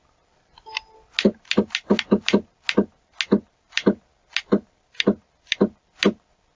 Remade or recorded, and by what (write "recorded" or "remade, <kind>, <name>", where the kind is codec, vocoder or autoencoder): recorded